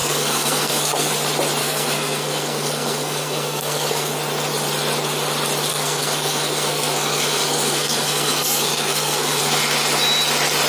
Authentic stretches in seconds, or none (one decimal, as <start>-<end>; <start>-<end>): 1.1-1.6; 4.1-5.7; 9.4-10.7